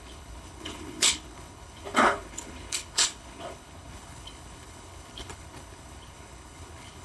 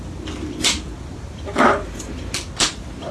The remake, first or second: first